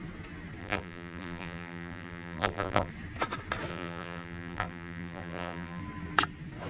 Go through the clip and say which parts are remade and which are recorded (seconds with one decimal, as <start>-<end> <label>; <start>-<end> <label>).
0.0-0.6 recorded; 0.6-2.9 remade; 2.9-3.7 recorded; 3.7-5.8 remade; 5.8-6.7 recorded